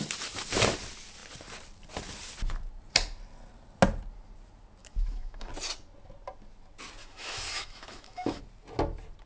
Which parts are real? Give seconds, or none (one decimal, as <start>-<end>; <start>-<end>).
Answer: 0.0-4.8; 5.5-7.0; 8.4-9.3